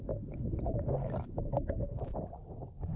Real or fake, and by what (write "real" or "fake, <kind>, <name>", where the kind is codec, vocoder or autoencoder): real